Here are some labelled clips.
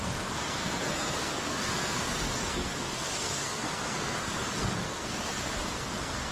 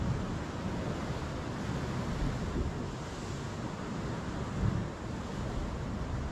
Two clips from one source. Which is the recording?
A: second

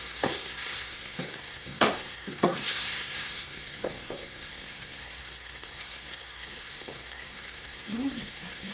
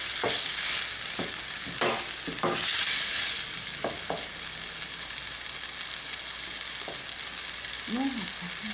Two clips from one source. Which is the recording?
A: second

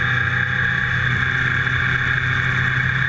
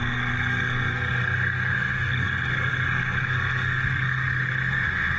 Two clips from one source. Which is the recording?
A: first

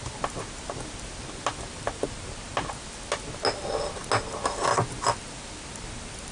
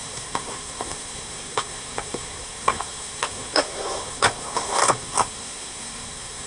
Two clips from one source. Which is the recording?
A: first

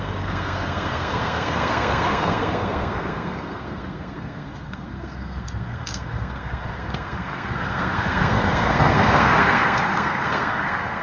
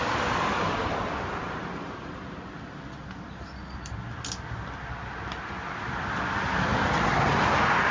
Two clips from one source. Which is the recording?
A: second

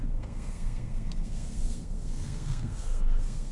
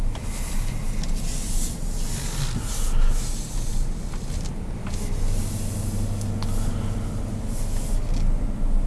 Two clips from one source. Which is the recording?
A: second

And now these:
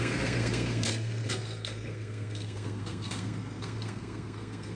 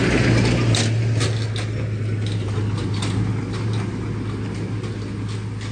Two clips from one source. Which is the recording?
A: second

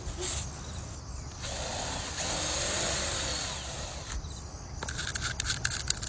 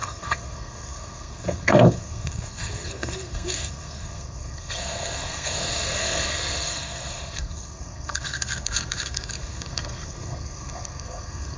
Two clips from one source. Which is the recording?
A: first